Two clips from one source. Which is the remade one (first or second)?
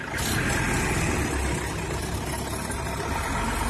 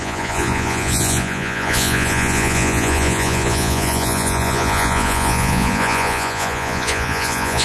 second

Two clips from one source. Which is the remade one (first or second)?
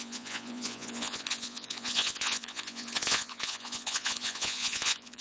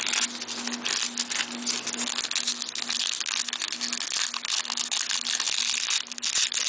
first